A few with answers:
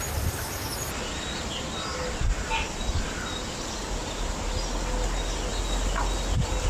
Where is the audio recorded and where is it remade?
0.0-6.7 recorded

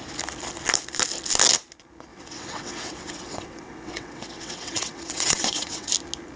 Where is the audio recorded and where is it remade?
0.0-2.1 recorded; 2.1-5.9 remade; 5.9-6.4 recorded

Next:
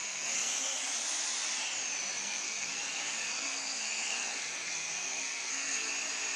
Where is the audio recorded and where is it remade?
0.0-0.9 remade; 0.9-2.2 recorded; 2.2-5.9 remade; 5.9-6.4 recorded